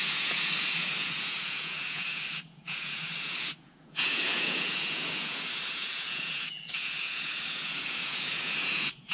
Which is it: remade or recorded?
remade